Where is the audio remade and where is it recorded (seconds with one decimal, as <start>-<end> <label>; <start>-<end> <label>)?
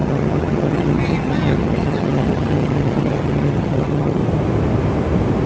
0.0-4.2 remade; 4.2-5.5 recorded